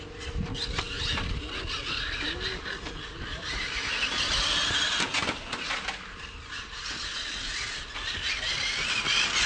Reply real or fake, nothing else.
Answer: real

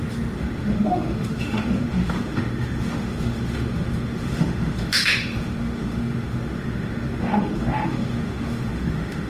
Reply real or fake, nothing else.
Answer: fake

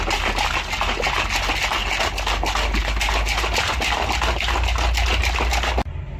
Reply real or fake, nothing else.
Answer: real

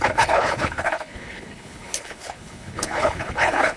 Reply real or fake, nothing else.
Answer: fake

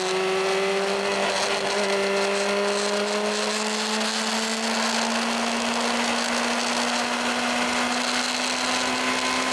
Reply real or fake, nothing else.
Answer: real